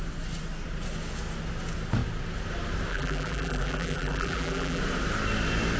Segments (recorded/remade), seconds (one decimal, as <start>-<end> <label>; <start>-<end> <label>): 0.0-2.9 recorded; 2.9-4.8 remade; 4.8-5.8 recorded